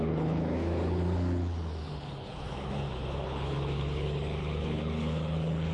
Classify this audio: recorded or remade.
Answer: remade